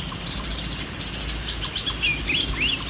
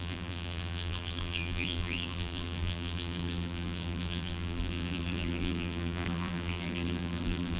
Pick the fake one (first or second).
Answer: second